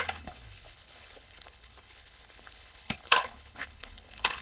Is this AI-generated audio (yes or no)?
yes